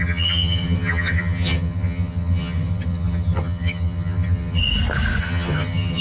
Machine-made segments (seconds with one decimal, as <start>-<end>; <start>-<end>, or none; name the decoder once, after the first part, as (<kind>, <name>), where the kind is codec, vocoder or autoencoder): 0.0-4.6 (vocoder, HiFi-GAN); 5.2-6.0